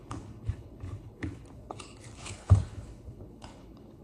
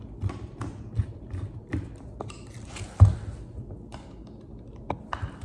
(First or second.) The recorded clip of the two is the second